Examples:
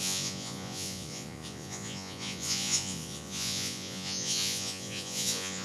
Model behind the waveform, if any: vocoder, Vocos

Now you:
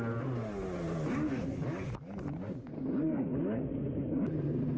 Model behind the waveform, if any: none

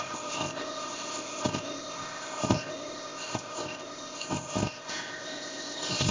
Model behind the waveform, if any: codec, ZipCodec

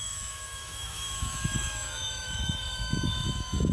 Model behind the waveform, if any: autoencoder, DAC-VAE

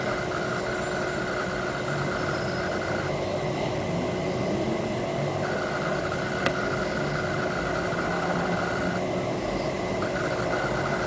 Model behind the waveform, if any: none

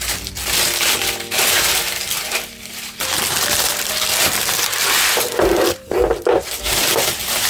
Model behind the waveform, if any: vocoder, BigVGAN v2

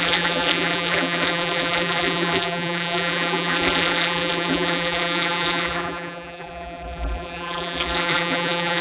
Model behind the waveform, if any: vocoder, BigVGAN v2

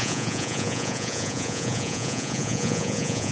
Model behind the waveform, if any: vocoder, Vocos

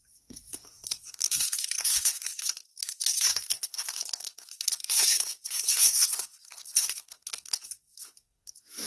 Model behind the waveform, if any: codec, SNAC